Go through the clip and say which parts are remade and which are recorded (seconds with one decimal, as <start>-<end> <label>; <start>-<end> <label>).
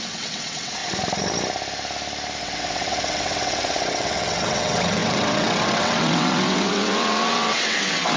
0.0-0.8 remade; 0.8-2.4 recorded; 2.4-8.2 remade